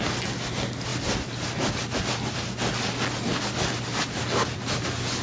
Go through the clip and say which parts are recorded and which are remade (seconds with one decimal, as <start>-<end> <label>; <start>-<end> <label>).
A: 0.0-5.2 recorded